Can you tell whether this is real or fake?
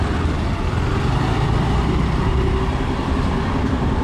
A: real